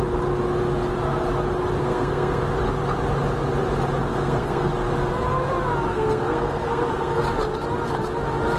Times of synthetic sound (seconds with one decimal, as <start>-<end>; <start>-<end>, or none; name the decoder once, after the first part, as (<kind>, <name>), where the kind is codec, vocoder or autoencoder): 1.8-2.4 (codec, SNAC); 4.0-4.7; 5.9-7.2